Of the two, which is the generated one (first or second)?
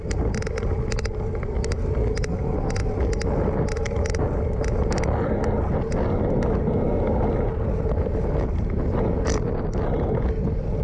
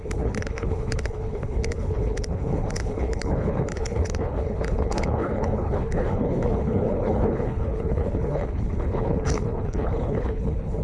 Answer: second